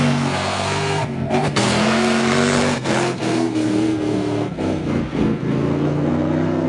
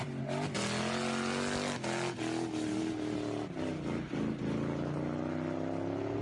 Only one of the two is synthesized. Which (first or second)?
first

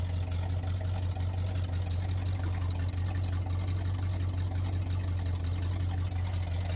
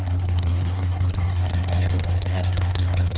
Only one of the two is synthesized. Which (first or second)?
second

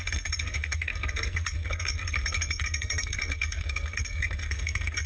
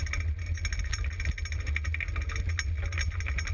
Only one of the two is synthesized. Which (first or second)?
first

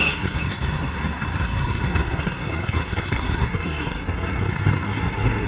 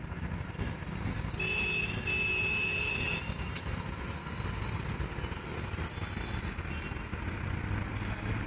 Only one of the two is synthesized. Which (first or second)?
first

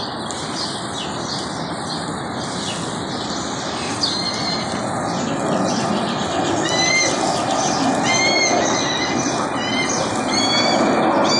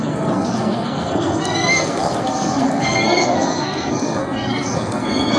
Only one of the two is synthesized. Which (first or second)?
second